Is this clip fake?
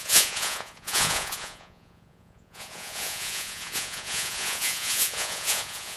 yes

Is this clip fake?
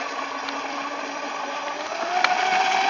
no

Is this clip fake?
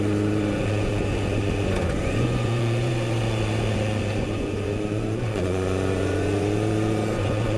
yes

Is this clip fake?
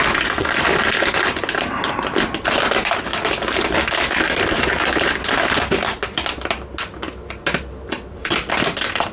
no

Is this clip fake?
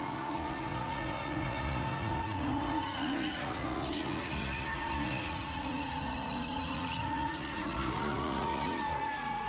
yes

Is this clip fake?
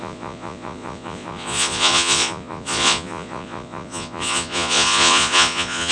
yes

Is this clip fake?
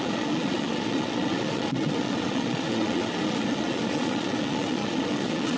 yes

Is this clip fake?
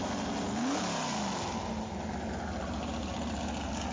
no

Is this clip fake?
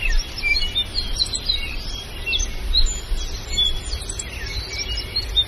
no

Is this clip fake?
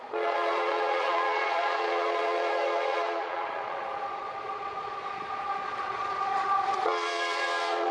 yes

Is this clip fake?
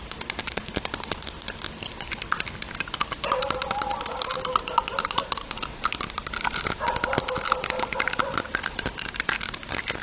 no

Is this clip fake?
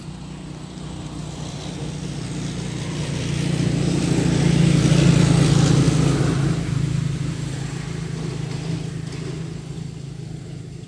no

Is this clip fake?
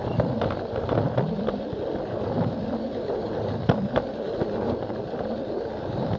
no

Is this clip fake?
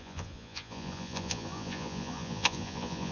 yes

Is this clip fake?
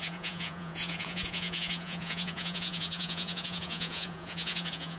yes